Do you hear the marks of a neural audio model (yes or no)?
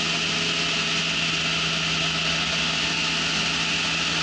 no